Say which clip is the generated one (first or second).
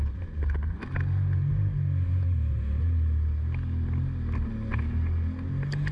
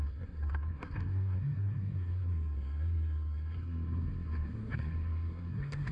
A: second